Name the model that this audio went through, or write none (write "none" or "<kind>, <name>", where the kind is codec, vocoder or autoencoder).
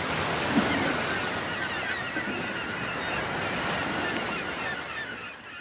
none